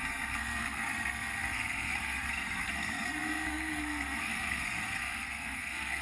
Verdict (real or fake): fake